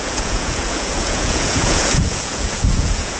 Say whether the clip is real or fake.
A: fake